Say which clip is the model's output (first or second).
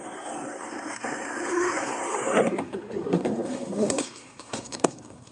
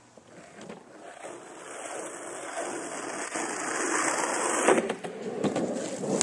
first